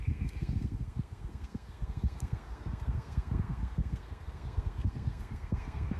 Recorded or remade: remade